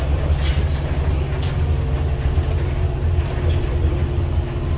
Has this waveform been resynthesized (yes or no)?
no